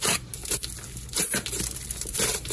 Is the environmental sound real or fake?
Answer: real